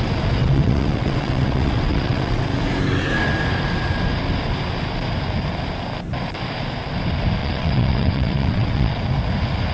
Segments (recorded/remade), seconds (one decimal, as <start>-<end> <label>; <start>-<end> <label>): 0.0-0.4 recorded; 0.4-2.4 remade; 2.4-7.4 recorded; 7.4-9.0 remade; 9.0-9.7 recorded